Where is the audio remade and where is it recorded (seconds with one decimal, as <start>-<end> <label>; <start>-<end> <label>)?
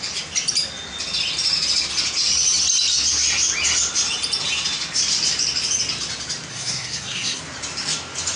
0.0-6.5 recorded; 6.5-7.4 remade; 7.4-8.4 recorded